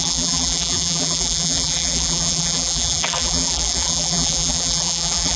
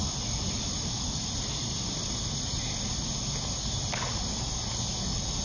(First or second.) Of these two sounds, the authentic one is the second